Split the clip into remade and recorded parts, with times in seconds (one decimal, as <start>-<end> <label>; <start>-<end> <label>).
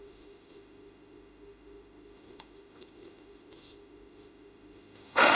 0.0-5.4 remade